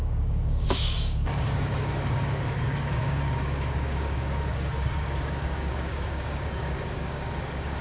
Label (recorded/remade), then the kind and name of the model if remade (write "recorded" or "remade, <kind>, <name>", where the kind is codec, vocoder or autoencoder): remade, codec, DAC